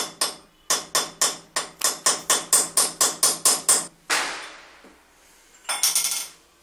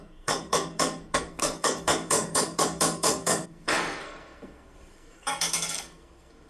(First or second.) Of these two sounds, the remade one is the second